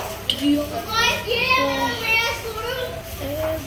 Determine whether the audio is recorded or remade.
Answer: recorded